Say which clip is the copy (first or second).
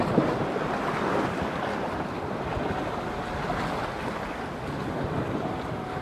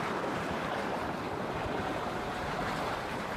second